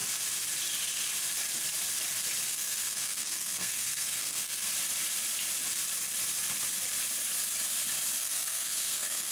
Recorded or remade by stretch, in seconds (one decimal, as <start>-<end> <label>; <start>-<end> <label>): 0.0-2.5 recorded; 2.5-4.7 remade; 4.7-8.2 recorded; 8.2-9.3 remade